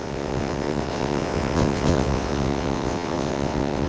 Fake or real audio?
fake